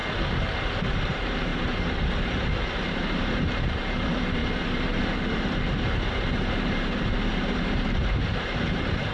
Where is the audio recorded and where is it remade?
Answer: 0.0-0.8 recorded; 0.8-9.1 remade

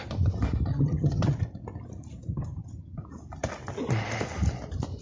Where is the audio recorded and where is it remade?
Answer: 0.0-0.7 recorded; 0.7-1.4 remade; 1.4-2.3 recorded; 2.3-3.0 remade; 3.0-5.0 recorded